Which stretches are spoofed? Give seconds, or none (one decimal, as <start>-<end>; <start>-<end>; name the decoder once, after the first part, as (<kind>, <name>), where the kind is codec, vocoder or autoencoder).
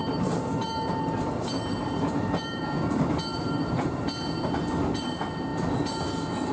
0.0-2.6 (vocoder, BigVGAN v2); 3.3-4.0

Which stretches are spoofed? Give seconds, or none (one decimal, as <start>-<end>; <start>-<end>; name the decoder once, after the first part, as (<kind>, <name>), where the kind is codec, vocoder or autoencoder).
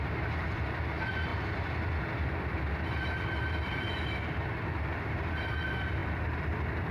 none